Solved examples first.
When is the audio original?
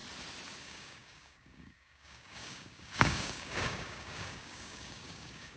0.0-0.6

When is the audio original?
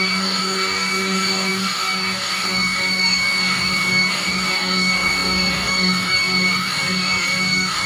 none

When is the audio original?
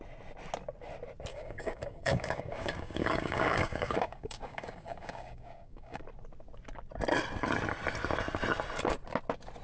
0.0-1.3; 6.0-9.6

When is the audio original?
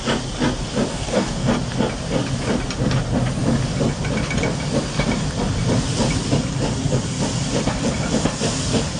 0.0-0.9; 1.5-9.0